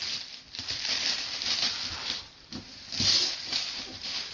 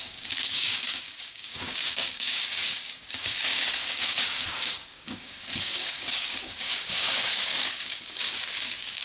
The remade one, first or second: second